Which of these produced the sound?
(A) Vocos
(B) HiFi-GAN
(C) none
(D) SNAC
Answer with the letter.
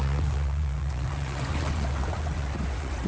A